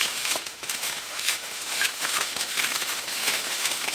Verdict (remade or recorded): remade